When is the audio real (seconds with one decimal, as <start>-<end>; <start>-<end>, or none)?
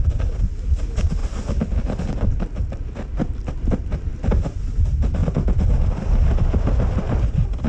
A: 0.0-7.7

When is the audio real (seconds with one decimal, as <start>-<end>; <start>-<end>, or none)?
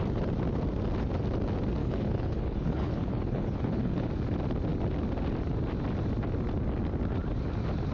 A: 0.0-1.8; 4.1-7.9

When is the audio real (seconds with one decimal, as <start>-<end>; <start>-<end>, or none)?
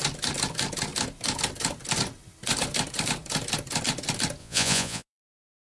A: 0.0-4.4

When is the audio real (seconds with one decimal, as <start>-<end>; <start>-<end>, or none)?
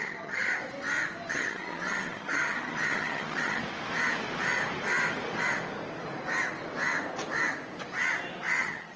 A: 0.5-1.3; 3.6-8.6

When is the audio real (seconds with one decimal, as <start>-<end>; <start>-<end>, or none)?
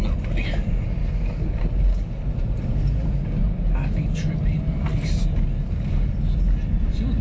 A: 0.0-1.0; 2.6-7.2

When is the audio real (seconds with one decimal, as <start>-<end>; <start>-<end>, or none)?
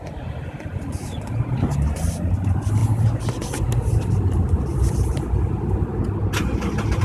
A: 0.0-7.0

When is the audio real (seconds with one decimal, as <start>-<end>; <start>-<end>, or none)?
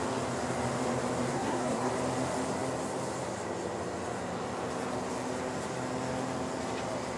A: 0.0-1.3; 1.9-7.2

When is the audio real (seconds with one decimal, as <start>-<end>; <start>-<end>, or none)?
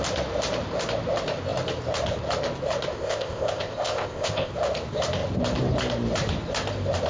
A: 0.0-2.9; 4.5-7.1